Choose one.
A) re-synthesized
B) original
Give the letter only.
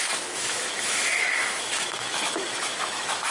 A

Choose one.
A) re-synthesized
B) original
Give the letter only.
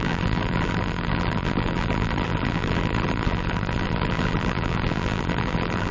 A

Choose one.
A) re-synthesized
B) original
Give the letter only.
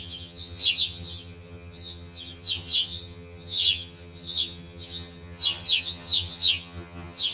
A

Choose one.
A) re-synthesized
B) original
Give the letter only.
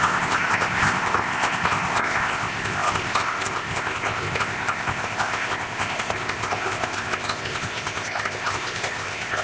A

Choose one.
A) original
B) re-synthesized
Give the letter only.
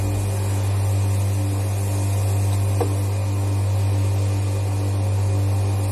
A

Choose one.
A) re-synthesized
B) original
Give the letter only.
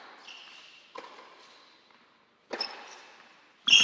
B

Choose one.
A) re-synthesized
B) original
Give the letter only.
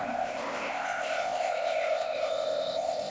A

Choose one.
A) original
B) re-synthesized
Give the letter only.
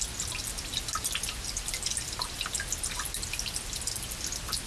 A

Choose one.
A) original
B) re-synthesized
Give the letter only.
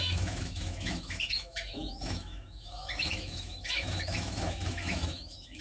B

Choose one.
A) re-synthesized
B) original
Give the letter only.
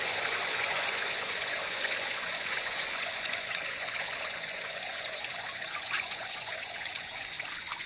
A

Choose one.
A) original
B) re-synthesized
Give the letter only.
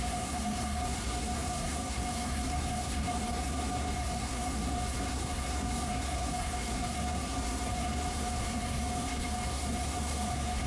B